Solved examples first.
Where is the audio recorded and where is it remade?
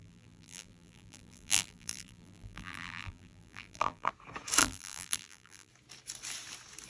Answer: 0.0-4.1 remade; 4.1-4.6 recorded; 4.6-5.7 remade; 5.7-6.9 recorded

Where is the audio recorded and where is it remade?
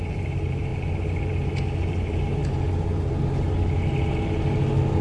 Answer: 0.0-0.7 remade; 0.7-1.9 recorded; 1.9-2.4 remade; 2.4-5.0 recorded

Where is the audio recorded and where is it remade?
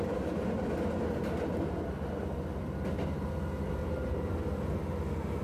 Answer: 0.0-3.8 recorded; 3.8-4.3 remade; 4.3-5.4 recorded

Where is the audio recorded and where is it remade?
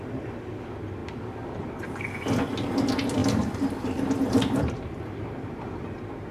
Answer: 0.0-3.2 recorded; 3.2-5.8 remade; 5.8-6.3 recorded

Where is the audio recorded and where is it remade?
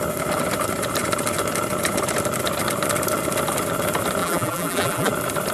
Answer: 0.0-4.2 recorded; 4.2-5.1 remade; 5.1-5.5 recorded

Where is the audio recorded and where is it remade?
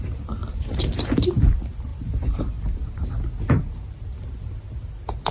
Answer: 0.0-0.4 recorded; 0.4-1.4 remade; 1.4-1.9 recorded; 1.9-2.4 remade; 2.4-5.3 recorded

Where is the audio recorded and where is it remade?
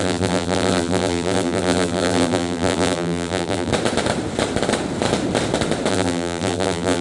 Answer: 0.0-3.7 remade; 3.7-5.9 recorded; 5.9-7.0 remade